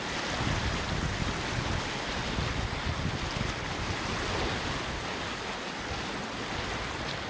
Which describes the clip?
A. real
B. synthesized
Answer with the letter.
A